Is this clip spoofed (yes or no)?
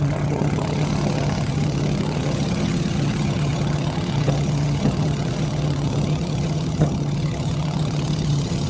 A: yes